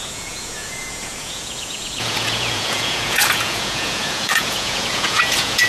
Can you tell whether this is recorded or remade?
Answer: remade